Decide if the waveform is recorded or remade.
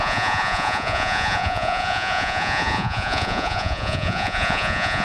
remade